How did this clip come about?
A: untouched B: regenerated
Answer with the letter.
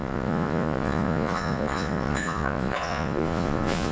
B